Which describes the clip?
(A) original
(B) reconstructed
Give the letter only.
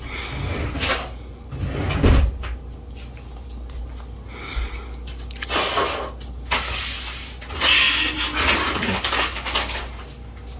A